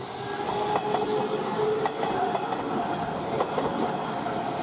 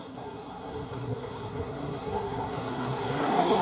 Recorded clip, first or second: first